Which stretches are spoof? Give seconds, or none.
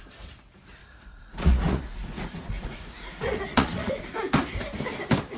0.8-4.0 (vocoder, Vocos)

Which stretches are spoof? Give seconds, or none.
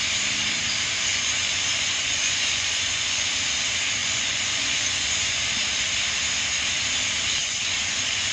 1.1-3.3 (vocoder, Vocos); 4.0-5.4; 7.4-8.3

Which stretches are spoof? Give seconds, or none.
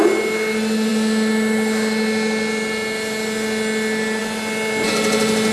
none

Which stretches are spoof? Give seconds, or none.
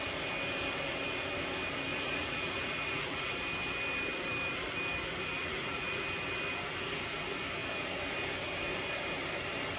1.9-3.3 (vocoder, Vocos); 5.4-6.0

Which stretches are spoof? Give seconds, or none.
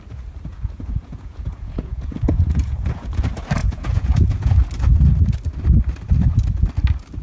0.5-3.2 (vocoder, Vocos); 3.6-4.5